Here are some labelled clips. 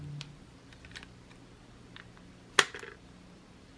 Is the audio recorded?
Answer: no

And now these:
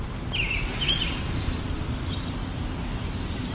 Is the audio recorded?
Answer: yes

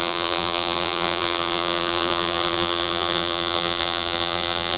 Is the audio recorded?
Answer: no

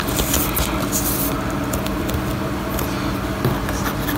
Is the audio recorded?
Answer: yes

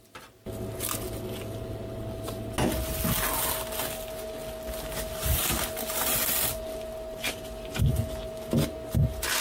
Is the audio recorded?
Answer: yes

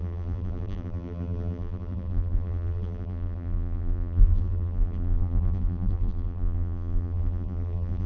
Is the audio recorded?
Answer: no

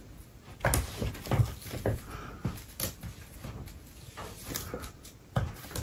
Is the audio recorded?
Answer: yes